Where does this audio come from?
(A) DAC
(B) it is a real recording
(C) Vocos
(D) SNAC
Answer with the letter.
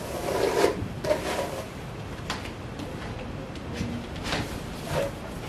B